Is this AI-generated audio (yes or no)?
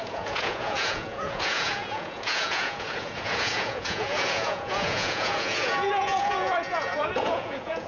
yes